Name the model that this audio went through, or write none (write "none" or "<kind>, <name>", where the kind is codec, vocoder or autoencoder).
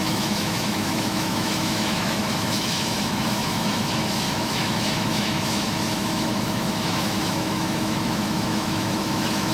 autoencoder, DAC-VAE